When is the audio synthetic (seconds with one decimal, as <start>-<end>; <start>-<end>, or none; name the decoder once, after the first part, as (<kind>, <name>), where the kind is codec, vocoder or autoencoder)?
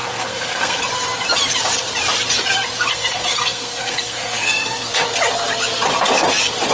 0.0-0.8 (codec, SNAC); 2.9-4.9